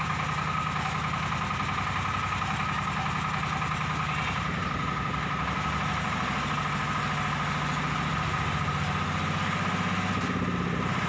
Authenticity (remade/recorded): recorded